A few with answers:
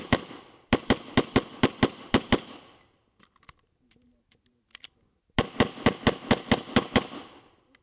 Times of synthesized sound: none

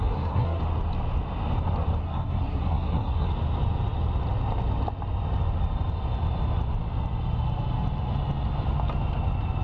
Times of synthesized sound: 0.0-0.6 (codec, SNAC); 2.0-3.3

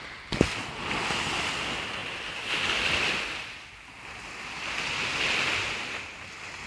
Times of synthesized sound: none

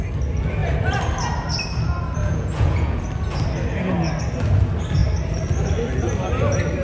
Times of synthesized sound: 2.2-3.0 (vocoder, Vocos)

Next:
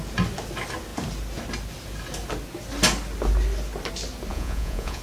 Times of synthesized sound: 4.3-5.0 (vocoder, Vocos)

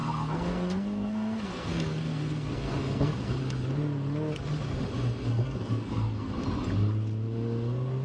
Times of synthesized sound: 0.0-3.4 (codec, SNAC); 5.3-6.3